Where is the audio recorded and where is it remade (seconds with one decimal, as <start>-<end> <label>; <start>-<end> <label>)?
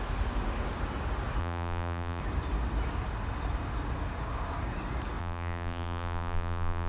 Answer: 0.0-1.4 recorded; 1.4-2.2 remade; 2.2-5.2 recorded; 5.2-6.9 remade